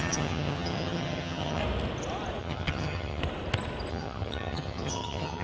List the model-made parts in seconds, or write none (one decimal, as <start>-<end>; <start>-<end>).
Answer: 0.0-1.6; 2.4-3.2; 3.9-5.4